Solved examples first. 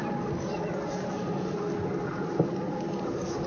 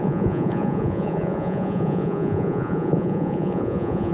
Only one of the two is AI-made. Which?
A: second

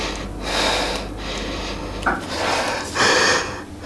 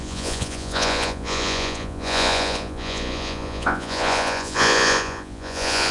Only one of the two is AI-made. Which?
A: second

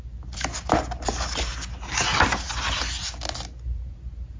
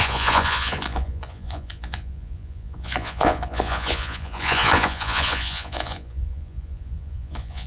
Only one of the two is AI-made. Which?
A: second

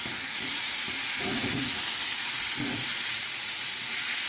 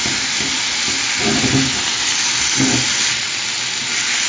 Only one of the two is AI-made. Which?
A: first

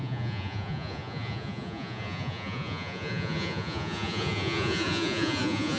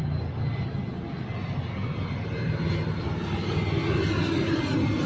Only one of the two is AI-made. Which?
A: first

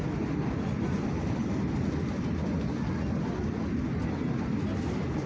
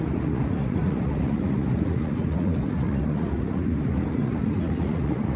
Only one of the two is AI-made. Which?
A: second